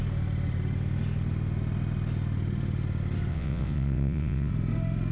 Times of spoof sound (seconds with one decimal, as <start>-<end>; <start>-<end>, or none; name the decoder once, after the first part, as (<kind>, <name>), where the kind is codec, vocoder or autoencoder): 3.3-4.5 (vocoder, WaveNeXt)